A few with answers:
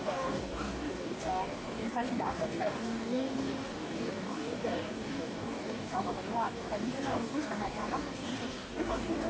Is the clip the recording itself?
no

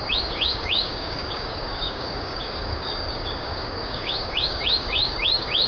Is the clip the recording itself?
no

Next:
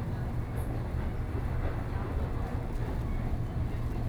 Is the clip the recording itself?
yes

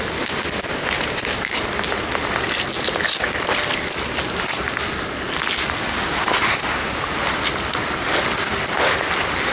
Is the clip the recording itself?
yes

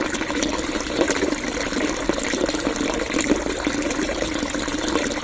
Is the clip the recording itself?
yes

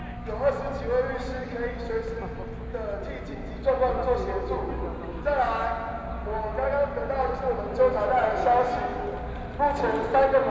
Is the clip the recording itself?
yes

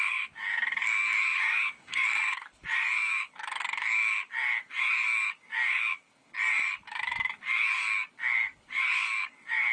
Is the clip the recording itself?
no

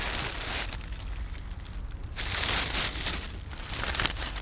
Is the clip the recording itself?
yes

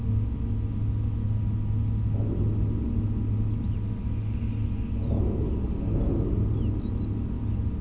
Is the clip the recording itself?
yes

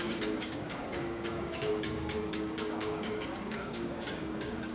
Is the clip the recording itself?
no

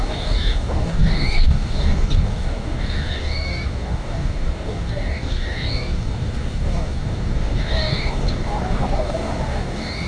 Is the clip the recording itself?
no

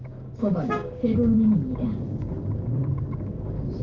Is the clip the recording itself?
no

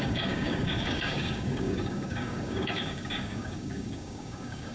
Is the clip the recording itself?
no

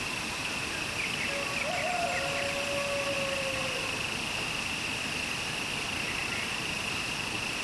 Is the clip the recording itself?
yes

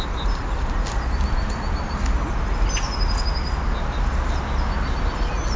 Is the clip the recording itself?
yes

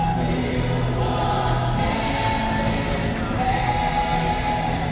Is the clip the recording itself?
yes